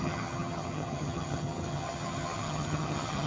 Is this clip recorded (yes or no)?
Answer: no